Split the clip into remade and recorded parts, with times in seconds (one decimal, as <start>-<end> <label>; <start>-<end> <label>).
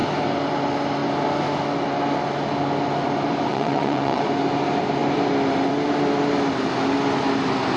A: 0.0-3.5 recorded; 3.5-4.2 remade; 4.2-7.8 recorded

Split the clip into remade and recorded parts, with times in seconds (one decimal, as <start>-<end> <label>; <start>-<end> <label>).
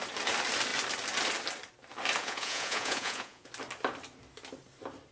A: 0.0-2.2 recorded; 2.2-3.5 remade; 3.5-5.1 recorded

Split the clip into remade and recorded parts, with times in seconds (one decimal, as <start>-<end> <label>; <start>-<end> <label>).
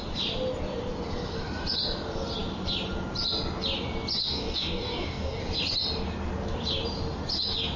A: 0.0-4.2 recorded; 4.2-5.4 remade; 5.4-7.8 recorded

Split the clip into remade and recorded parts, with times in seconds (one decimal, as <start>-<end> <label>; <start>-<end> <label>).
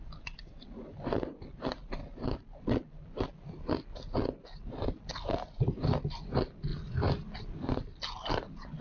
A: 0.0-8.8 recorded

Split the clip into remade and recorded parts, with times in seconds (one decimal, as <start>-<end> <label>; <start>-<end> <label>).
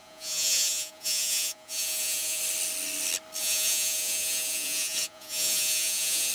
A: 0.0-2.4 remade; 2.4-3.4 recorded; 3.4-6.3 remade